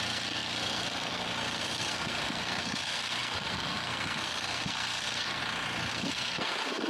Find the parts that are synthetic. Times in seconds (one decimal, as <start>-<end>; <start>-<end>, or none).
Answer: 0.0-5.4; 5.9-6.9